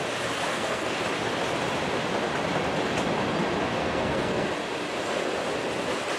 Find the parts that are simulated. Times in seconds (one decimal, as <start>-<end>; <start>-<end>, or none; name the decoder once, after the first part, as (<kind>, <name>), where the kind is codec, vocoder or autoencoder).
0.5-1.0 (codec, SNAC); 3.8-4.5

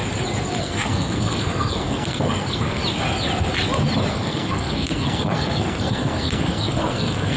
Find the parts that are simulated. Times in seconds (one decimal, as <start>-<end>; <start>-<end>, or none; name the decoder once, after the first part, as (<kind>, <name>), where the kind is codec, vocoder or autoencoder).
0.6-2.8 (codec, SNAC); 4.1-7.4

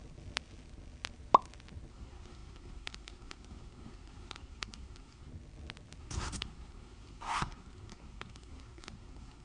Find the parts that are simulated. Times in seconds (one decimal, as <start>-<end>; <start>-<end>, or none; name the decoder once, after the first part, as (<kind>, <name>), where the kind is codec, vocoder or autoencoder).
1.9-5.3 (codec, SNAC); 6.0-9.4

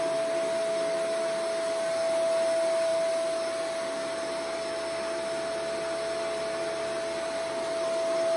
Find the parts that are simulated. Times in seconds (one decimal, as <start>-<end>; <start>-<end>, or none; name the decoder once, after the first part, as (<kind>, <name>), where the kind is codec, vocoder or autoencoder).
none

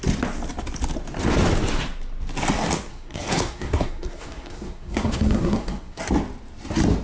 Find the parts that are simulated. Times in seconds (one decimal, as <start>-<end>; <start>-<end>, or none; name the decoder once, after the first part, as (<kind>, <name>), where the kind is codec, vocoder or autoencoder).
2.9-6.0 (codec, SNAC)